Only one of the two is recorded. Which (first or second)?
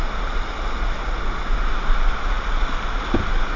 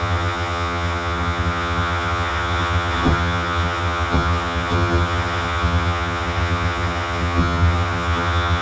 first